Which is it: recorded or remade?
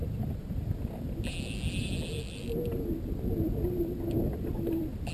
recorded